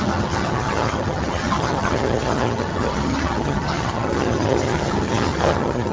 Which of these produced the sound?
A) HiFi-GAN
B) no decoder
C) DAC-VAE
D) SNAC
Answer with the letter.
A